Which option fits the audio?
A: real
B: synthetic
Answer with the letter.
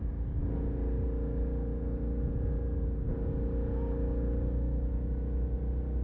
A